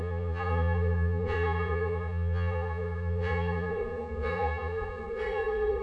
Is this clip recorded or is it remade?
remade